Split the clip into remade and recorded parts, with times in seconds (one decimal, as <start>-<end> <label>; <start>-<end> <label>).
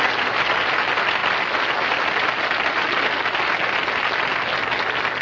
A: 0.0-5.2 recorded